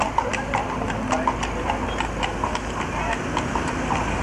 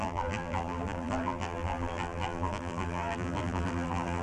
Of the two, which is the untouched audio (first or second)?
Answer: first